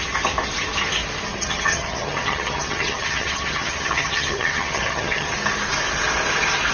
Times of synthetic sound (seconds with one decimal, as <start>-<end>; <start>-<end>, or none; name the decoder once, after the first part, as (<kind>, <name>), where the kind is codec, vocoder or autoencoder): 1.3-5.3 (vocoder, HiFi-GAN)